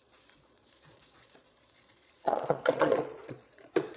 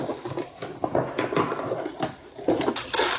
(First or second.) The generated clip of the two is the first